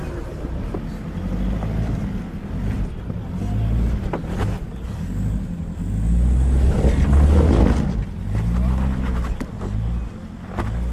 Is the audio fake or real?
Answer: real